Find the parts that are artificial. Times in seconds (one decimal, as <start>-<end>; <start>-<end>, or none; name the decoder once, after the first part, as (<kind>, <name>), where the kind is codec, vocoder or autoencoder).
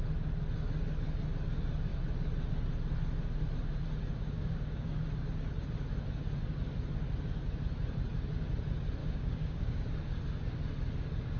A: 4.1-5.0 (codec, DAC); 9.0-9.9